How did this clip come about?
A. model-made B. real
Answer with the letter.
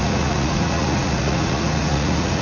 A